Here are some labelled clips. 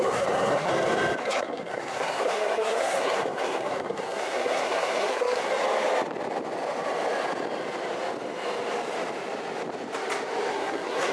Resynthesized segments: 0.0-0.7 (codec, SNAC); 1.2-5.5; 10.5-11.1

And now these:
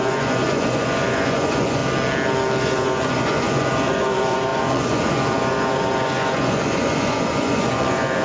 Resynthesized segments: 0.0-1.8 (vocoder, Vocos); 2.6-8.2

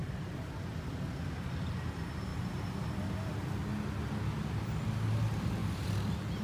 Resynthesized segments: none

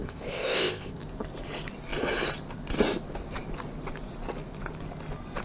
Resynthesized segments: 0.0-1.0 (codec, ZipCodec)

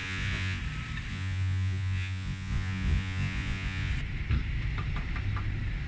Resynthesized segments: 0.0-0.6 (vocoder, Vocos); 1.1-3.9